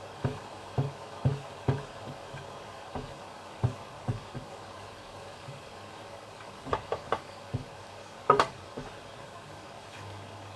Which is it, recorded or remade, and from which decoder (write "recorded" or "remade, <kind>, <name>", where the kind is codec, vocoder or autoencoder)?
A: remade, codec, DAC